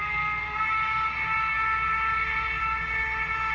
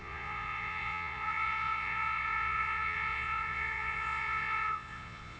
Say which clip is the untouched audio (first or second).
first